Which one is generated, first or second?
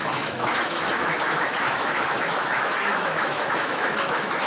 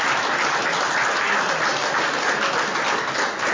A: first